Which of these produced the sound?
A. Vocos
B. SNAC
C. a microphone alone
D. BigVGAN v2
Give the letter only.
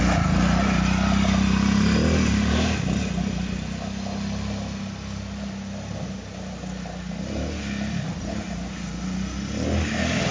C